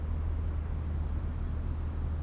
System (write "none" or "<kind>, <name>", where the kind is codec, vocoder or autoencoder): none